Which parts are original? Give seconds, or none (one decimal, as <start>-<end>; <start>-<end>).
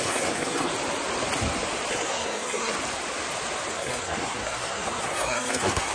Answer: 0.7-1.9; 2.7-3.7